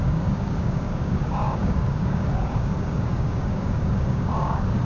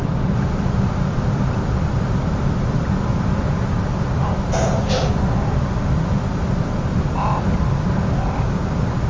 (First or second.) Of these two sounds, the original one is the second